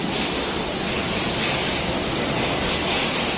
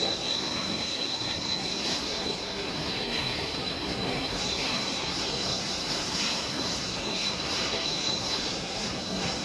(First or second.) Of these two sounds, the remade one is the second